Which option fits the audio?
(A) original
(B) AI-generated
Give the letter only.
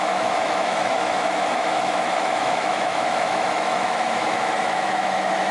B